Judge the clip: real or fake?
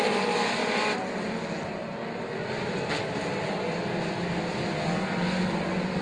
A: real